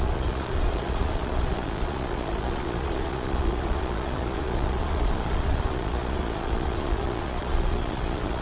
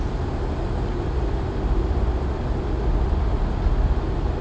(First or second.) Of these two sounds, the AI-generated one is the first